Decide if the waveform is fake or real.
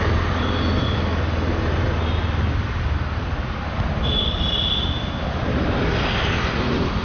real